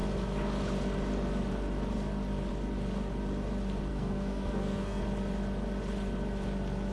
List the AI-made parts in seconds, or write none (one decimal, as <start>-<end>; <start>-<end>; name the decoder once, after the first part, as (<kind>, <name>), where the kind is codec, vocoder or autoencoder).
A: 3.9-5.0 (codec, SNAC)